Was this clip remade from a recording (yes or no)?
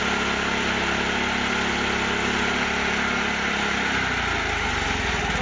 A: no